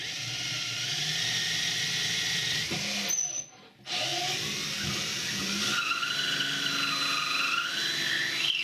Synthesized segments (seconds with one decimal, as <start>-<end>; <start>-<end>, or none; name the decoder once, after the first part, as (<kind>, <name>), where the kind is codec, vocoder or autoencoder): none